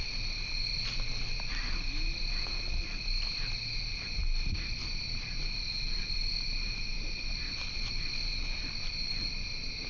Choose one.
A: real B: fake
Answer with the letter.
A